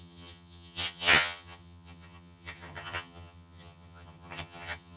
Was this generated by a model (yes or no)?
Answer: yes